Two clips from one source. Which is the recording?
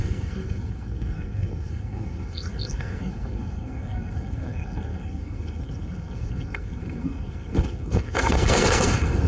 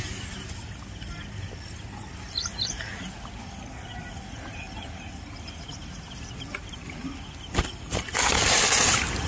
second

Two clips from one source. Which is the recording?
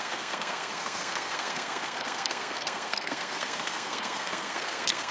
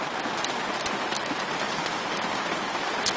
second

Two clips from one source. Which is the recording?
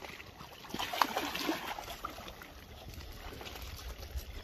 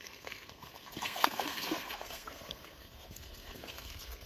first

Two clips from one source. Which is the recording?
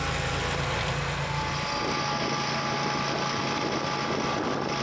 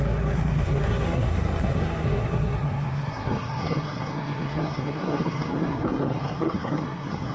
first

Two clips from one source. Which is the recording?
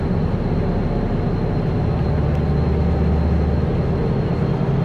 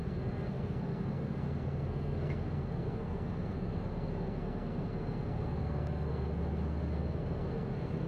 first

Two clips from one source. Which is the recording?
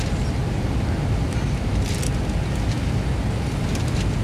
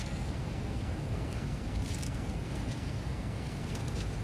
first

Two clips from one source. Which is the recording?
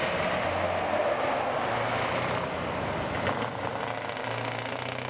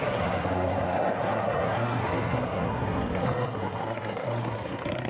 first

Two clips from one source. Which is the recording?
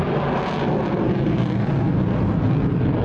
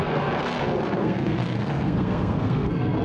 first